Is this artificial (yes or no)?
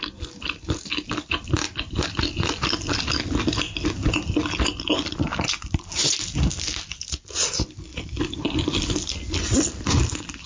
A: no